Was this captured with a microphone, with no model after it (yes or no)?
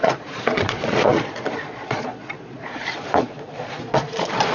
no